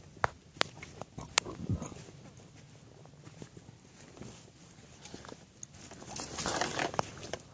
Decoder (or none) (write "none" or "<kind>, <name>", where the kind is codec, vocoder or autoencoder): none